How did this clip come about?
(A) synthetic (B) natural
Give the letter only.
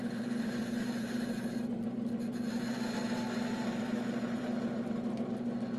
A